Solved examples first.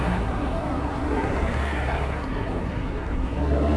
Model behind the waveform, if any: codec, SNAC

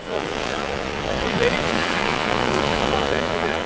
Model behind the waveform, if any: vocoder, Vocos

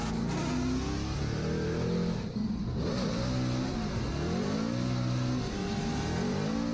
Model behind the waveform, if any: none